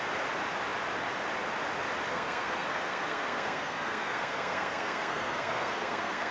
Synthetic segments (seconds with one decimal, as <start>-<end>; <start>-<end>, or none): 2.1-6.3